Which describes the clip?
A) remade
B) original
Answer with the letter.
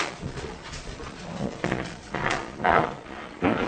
A